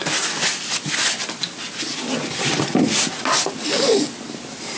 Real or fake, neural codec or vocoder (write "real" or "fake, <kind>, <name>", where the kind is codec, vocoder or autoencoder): real